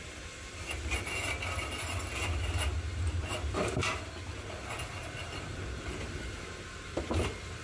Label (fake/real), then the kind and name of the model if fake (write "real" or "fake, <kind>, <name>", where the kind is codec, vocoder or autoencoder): real